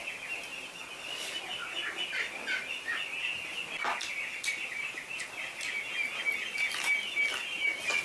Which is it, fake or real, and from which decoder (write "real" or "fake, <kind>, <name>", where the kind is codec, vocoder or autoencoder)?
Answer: real